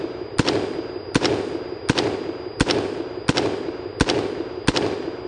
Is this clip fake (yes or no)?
no